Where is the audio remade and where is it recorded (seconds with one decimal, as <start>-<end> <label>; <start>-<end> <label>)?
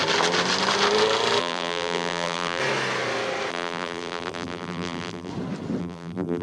0.0-1.4 recorded; 1.4-2.6 remade; 2.6-3.5 recorded; 3.5-5.3 remade; 5.3-5.8 recorded; 5.8-6.4 remade